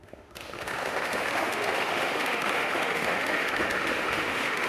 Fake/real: fake